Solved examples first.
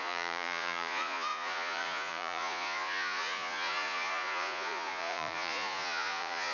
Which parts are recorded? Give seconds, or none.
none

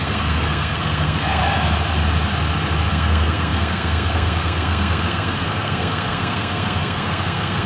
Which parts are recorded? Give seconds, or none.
1.4-2.9

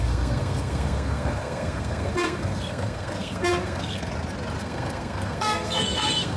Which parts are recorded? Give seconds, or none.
4.1-4.6

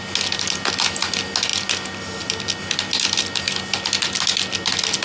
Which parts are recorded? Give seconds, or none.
0.0-5.0

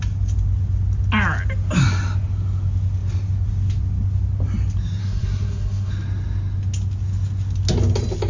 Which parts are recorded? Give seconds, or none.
0.0-5.0; 5.9-8.3

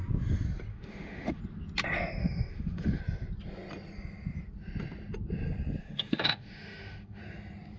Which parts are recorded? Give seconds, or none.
0.0-0.7; 1.4-2.2; 3.0-5.8; 7.2-7.8